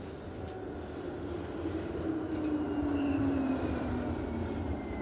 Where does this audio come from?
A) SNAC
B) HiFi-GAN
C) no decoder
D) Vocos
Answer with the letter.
C